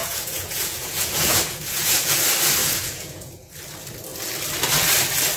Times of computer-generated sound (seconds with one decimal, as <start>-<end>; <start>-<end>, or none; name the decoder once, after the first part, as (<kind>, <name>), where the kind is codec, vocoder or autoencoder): 0.0-2.2 (vocoder, Vocos); 2.6-3.6